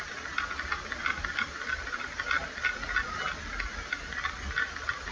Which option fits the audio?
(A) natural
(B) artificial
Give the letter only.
A